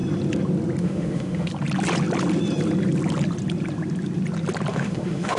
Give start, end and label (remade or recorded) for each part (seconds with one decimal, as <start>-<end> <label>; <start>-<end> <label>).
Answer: 0.0-0.8 recorded; 0.8-1.5 remade; 1.5-4.7 recorded; 4.7-5.4 remade